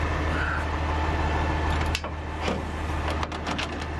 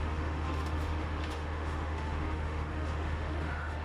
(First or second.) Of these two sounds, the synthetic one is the second